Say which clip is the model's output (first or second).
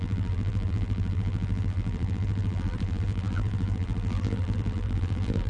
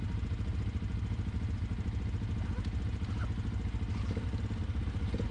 first